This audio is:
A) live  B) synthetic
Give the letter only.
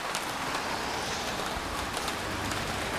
A